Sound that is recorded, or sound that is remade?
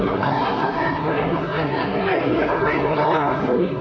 remade